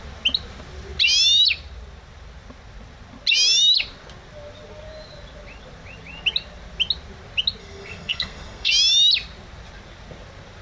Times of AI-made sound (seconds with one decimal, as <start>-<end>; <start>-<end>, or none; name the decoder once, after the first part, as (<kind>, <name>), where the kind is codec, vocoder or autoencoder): 7.6-8.7 (codec, SNAC)